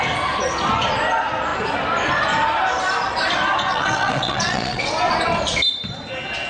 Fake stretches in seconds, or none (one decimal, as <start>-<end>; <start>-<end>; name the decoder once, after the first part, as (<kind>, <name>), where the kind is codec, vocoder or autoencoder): 3.7-4.9 (vocoder, WaveNeXt)